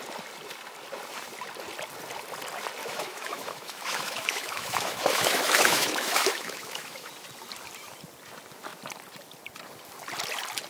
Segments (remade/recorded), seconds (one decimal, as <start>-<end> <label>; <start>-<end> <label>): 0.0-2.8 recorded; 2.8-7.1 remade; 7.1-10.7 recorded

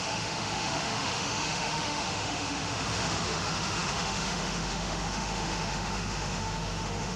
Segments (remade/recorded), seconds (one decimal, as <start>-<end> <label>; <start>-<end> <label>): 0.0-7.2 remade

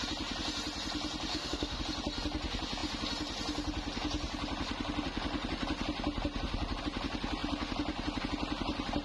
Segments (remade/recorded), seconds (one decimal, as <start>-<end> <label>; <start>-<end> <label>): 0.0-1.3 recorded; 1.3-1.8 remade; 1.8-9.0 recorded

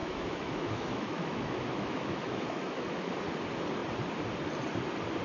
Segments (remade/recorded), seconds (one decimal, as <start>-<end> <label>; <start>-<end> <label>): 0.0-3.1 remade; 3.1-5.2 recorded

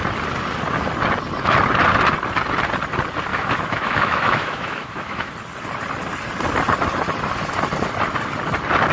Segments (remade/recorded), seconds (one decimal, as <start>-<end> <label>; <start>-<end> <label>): 0.0-3.3 recorded; 3.3-5.3 remade; 5.3-8.9 recorded